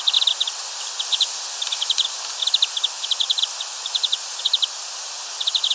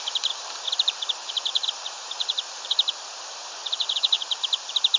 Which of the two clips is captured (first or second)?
first